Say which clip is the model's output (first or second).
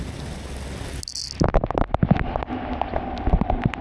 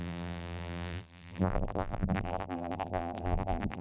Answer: second